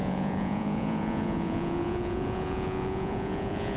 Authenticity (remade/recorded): remade